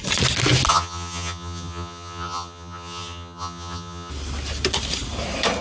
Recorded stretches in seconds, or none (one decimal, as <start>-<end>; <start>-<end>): 0.0-0.7; 4.1-5.6